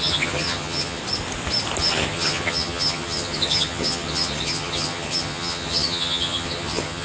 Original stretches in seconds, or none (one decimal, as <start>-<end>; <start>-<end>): 1.0-1.8